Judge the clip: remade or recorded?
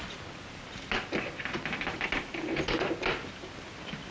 recorded